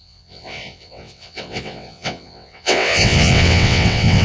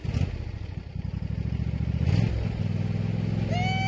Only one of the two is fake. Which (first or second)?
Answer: first